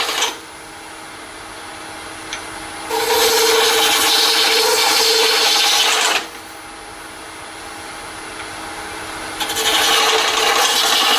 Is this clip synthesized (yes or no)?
no